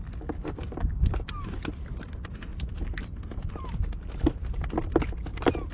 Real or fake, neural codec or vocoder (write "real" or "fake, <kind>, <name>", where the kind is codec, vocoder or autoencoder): real